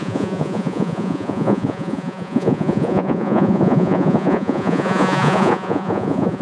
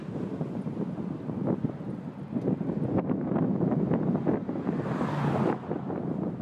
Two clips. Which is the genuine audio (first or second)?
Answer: second